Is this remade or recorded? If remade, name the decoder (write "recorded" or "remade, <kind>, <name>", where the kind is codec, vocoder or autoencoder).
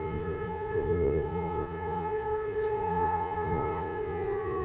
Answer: remade, vocoder, Vocos